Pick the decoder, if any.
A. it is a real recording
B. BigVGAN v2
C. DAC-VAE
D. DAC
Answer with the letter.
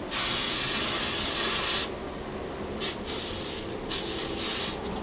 A